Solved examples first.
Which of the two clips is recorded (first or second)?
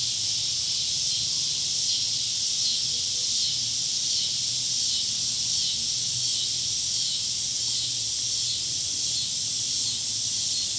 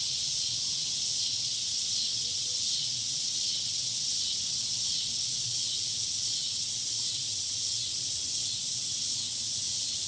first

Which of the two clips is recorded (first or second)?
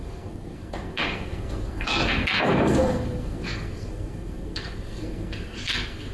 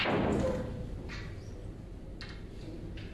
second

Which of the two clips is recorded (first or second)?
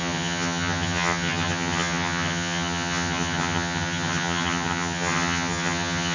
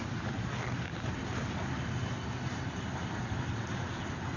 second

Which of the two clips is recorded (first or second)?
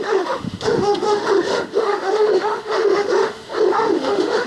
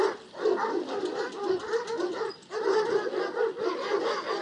second